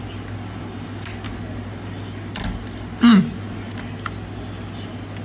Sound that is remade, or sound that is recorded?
recorded